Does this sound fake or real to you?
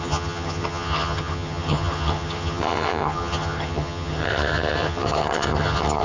fake